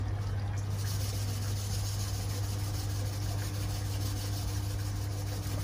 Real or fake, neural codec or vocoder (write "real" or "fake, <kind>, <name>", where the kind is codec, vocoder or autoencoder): real